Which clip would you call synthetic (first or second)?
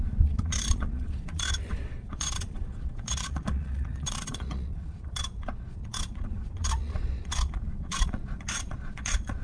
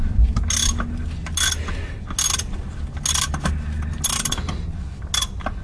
first